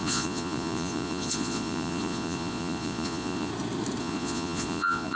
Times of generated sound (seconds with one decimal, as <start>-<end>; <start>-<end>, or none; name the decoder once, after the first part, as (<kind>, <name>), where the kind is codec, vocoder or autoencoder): 0.0-3.5 (vocoder, Vocos); 4.0-5.2